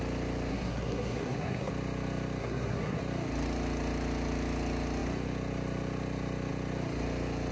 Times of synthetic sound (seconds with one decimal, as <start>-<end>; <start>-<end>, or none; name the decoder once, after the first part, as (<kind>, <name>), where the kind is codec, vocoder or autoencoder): 0.5-1.7 (codec, SNAC); 2.4-3.0